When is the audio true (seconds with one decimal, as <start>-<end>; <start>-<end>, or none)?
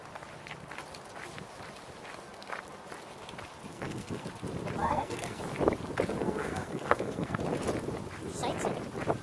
0.0-3.7; 4.3-4.8; 5.4-6.2; 7.4-9.2